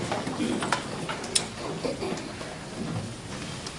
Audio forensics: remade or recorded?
recorded